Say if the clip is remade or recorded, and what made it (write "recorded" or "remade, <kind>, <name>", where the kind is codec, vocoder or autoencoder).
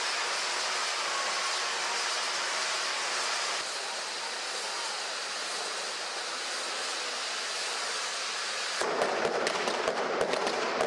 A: recorded